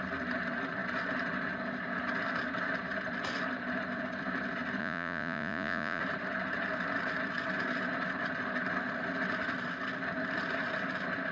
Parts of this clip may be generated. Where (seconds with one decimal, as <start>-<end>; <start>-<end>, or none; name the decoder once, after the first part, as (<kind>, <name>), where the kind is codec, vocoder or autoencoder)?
4.8-6.0 (vocoder, Vocos)